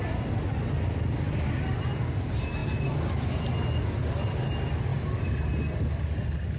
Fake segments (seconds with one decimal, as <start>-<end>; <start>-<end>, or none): none